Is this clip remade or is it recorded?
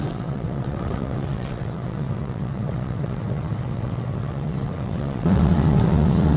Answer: remade